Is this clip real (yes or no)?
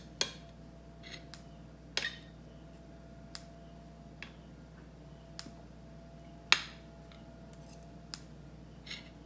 yes